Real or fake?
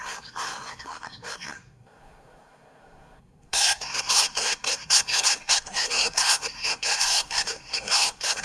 fake